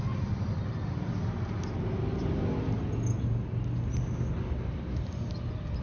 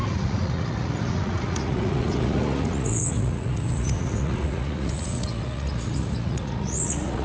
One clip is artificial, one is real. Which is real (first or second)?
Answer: first